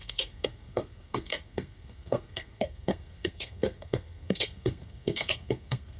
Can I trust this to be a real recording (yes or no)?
no